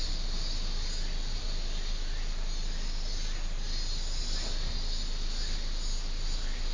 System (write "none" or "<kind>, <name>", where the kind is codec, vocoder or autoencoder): none